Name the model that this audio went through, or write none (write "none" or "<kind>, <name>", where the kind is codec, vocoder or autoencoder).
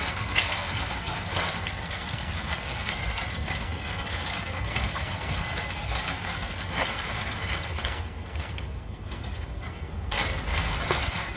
codec, SNAC